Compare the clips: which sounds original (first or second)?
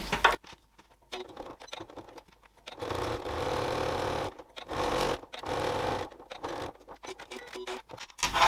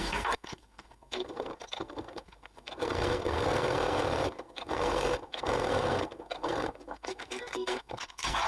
first